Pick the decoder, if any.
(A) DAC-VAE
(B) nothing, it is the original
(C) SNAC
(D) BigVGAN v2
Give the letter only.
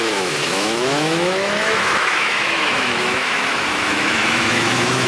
A